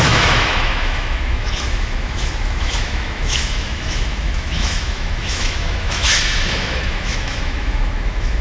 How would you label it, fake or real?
fake